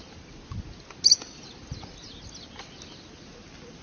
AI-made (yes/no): no